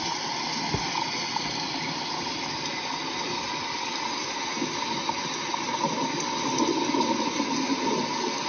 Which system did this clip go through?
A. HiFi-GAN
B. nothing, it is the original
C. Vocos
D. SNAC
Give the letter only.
B